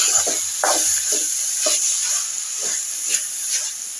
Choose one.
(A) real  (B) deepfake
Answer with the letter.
A